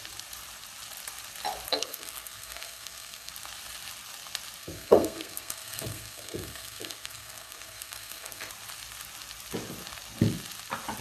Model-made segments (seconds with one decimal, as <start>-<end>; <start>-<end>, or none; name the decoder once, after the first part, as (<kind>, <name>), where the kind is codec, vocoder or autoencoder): 1.7-3.3 (codec, SNAC); 4.6-8.5